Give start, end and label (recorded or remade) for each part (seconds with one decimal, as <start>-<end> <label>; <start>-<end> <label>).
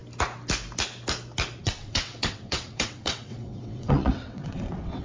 0.0-1.6 recorded; 1.6-5.0 remade